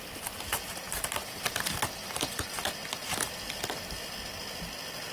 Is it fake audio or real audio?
real